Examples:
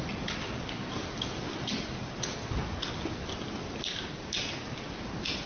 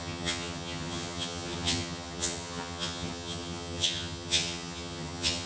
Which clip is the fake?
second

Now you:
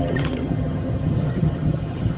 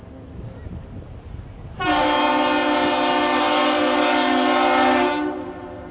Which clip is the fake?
first